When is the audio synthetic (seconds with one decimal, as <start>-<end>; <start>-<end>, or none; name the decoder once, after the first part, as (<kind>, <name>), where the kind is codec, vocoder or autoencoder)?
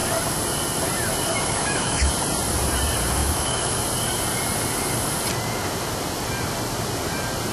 1.3-2.1 (autoencoder, DAC-VAE); 3.2-3.8